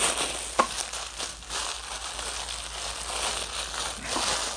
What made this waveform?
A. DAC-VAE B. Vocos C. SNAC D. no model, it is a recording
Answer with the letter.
D